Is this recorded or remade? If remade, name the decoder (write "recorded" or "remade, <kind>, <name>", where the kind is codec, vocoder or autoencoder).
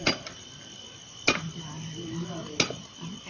recorded